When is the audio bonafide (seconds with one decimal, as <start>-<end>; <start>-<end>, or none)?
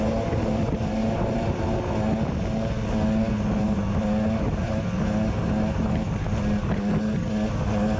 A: 0.0-1.0; 1.6-8.0